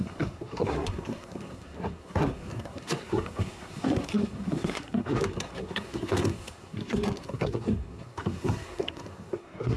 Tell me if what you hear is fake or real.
fake